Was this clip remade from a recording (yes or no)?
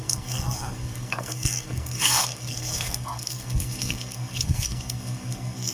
yes